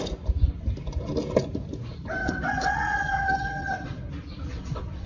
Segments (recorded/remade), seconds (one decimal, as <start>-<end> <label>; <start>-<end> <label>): 0.0-2.2 recorded; 2.2-4.1 remade; 4.1-4.5 recorded; 4.5-5.1 remade